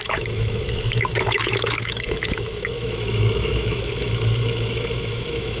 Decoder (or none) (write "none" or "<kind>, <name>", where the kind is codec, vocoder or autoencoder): autoencoder, DAC-VAE